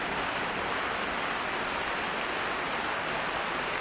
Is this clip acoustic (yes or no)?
yes